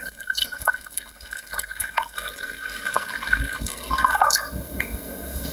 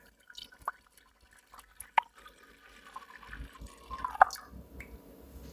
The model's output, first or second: first